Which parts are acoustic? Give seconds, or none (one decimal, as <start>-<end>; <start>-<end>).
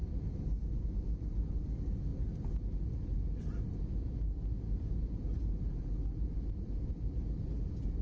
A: 0.0-8.0